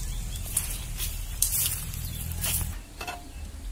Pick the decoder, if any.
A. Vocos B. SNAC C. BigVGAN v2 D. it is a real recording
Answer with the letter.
C